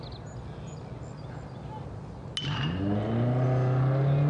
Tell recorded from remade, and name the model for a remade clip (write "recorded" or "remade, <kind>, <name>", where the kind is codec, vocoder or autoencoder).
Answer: recorded